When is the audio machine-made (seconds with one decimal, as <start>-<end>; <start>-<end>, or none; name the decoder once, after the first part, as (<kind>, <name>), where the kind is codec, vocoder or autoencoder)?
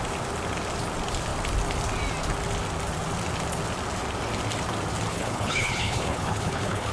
5.1-6.9 (codec, HILCodec)